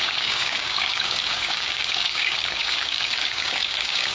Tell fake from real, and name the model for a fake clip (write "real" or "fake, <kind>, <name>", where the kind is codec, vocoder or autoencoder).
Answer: fake, codec, DAC